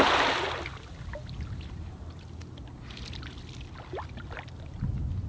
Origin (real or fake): real